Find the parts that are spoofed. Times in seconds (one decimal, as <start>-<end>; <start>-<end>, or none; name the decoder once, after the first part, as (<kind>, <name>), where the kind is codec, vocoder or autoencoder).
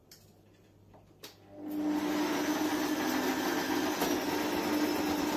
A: none